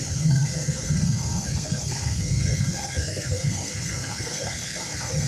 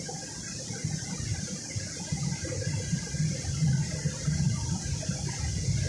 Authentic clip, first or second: second